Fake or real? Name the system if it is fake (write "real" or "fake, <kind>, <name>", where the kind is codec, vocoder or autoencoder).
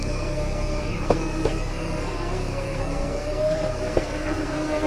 fake, codec, SNAC